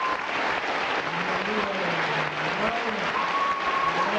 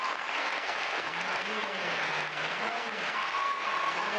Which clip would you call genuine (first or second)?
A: first